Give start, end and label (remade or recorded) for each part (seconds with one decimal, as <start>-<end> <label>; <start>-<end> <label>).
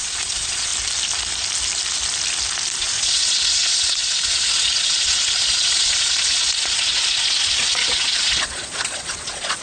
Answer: 0.0-0.7 remade; 0.7-2.8 recorded; 2.8-9.6 remade